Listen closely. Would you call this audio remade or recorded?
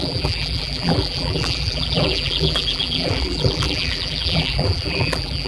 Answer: remade